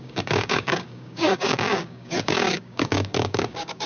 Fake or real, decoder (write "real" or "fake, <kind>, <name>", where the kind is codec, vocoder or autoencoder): fake, codec, DAC